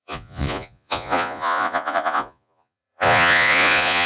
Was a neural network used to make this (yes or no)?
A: yes